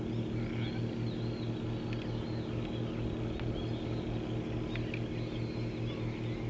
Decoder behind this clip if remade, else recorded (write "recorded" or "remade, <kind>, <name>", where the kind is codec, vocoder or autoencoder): recorded